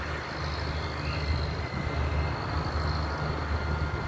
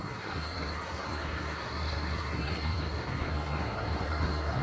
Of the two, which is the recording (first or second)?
first